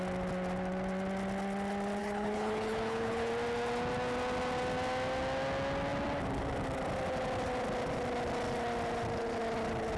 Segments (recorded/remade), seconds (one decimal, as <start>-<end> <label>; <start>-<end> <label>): 0.0-2.0 recorded; 2.0-3.3 remade; 3.3-10.0 recorded